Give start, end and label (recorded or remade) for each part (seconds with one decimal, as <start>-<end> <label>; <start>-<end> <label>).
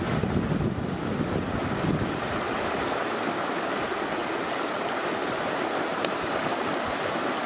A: 0.0-7.5 recorded